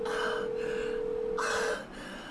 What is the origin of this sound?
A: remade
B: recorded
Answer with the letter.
B